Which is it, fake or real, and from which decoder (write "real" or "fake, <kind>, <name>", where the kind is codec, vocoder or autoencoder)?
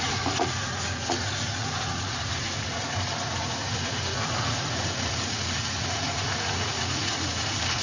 fake, vocoder, Vocos